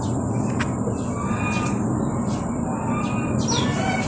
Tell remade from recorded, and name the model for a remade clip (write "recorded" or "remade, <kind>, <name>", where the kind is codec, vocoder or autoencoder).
recorded